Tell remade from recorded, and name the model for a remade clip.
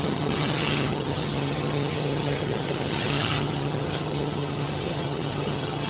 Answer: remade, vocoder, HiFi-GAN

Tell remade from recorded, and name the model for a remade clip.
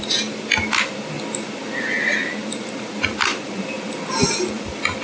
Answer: recorded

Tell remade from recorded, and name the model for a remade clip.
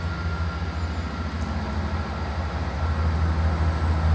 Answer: recorded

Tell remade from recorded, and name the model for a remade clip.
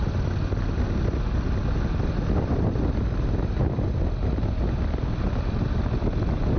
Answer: recorded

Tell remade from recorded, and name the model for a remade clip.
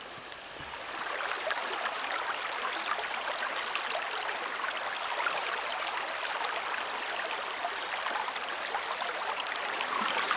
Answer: recorded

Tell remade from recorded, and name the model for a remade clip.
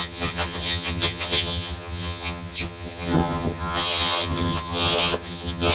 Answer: remade, vocoder, HiFi-GAN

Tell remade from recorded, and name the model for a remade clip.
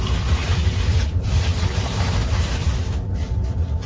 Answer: recorded